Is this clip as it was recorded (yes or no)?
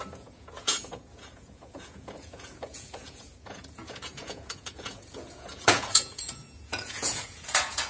no